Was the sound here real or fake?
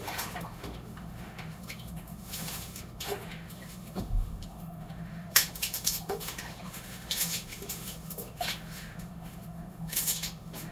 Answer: fake